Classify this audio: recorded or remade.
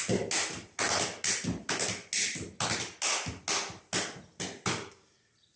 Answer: recorded